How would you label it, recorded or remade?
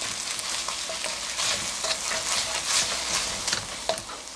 recorded